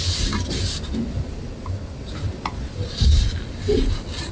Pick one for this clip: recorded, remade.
recorded